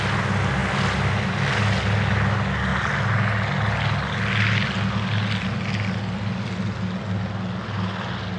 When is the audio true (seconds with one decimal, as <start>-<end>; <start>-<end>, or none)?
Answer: 0.0-8.4